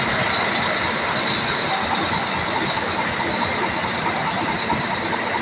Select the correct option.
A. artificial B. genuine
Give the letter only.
B